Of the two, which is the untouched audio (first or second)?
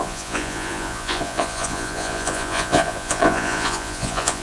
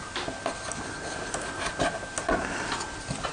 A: second